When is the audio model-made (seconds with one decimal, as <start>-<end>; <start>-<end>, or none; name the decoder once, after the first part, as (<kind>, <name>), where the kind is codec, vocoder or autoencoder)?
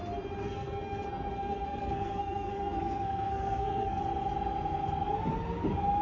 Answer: 0.4-4.0 (codec, SNAC)